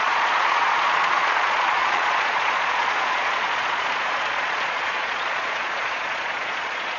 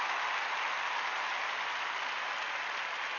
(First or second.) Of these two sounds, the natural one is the second